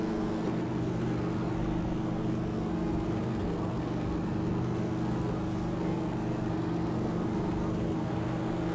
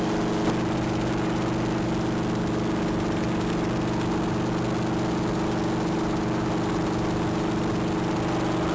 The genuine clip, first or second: second